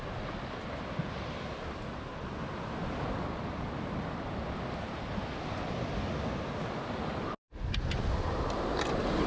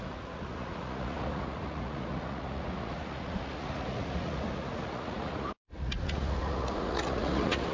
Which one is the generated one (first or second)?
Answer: second